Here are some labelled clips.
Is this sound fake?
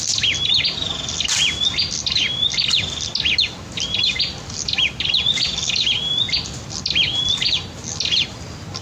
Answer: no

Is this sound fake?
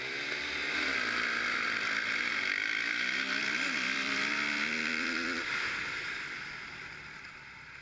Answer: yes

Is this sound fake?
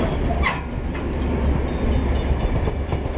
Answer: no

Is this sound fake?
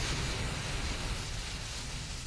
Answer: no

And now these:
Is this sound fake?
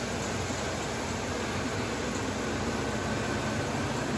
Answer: no